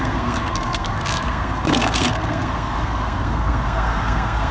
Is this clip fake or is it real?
fake